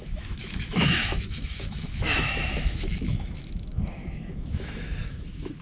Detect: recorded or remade remade